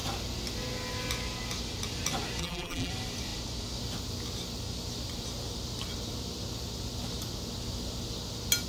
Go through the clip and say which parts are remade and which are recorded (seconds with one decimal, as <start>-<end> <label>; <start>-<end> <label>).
0.0-2.4 recorded; 2.4-2.9 remade; 2.9-8.7 recorded